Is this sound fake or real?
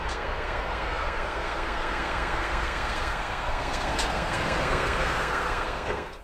fake